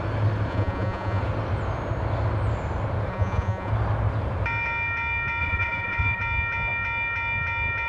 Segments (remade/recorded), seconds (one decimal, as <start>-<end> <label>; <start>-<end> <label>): 0.0-0.5 recorded; 0.5-1.2 remade; 1.2-3.1 recorded; 3.1-3.7 remade; 3.7-5.4 recorded; 5.4-6.2 remade; 6.2-7.9 recorded